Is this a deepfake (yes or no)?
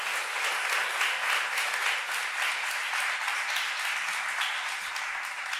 no